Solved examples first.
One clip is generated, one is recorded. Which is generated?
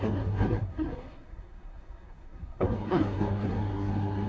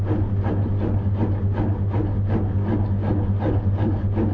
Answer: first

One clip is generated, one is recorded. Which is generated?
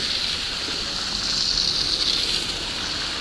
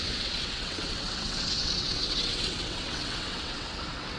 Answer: second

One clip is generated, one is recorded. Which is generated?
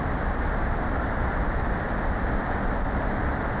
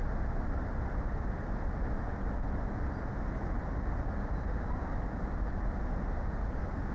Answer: first